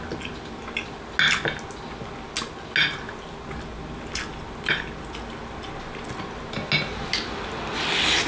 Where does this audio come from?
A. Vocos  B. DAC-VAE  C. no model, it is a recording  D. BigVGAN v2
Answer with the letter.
C